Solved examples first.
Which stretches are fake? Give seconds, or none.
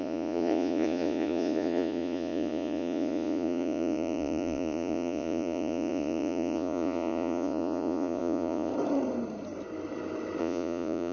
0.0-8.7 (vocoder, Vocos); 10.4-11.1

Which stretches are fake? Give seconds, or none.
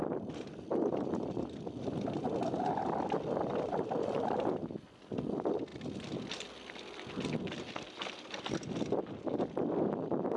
none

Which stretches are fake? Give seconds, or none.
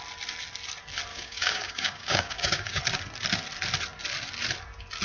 1.1-2.8 (codec, DAC)